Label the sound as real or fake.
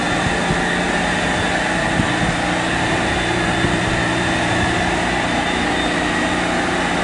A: real